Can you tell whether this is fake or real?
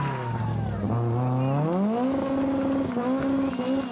real